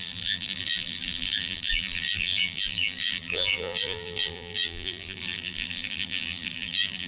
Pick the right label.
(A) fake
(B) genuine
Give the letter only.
A